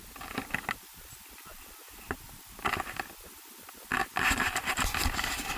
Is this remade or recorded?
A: recorded